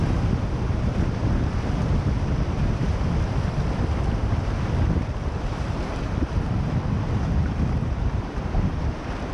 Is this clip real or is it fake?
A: fake